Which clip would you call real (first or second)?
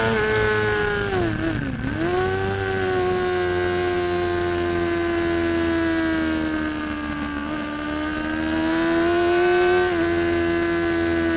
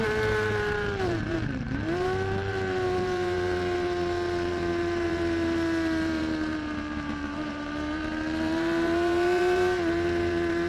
first